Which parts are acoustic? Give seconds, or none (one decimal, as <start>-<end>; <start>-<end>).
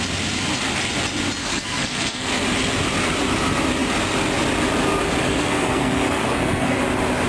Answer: 0.0-1.4; 2.4-5.3; 6.8-7.3